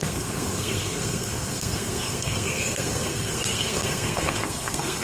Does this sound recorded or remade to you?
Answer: remade